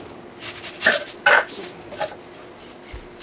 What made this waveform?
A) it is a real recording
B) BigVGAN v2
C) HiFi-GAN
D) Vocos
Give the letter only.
A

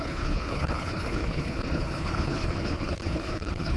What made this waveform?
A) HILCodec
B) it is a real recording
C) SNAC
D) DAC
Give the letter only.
A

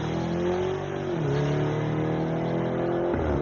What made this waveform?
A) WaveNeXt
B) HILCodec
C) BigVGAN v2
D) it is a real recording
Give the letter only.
D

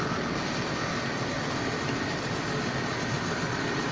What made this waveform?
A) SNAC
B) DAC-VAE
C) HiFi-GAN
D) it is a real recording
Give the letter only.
D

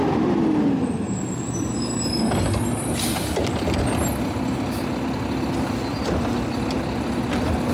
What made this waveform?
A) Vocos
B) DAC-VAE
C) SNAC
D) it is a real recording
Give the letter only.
D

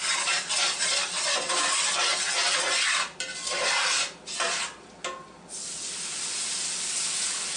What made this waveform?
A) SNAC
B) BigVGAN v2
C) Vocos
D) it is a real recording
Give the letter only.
D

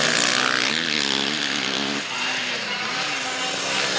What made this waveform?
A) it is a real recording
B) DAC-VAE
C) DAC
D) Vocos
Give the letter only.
A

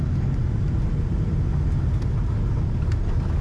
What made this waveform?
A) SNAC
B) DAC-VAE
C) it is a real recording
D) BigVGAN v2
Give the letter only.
C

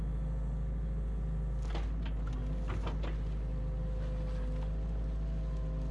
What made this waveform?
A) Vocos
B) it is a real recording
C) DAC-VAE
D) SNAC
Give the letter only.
B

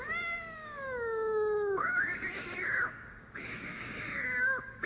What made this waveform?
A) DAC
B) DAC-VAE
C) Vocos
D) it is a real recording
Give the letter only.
A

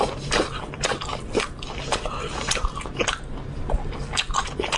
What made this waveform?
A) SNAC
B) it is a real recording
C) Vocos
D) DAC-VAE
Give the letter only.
B